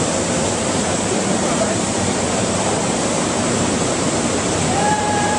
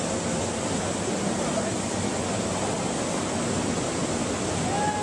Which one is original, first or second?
second